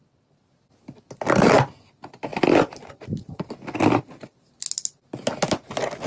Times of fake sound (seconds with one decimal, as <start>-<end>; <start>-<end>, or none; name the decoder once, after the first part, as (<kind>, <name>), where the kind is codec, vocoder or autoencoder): none